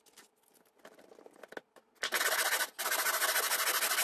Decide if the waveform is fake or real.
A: real